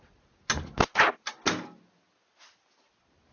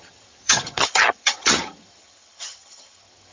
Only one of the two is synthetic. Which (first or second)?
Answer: second